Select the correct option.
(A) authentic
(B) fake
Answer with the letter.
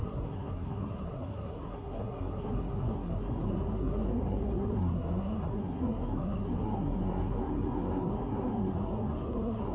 B